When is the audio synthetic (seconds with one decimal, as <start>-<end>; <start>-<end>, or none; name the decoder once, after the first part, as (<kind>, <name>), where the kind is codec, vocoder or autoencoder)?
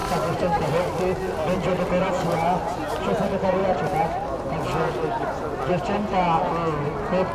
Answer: none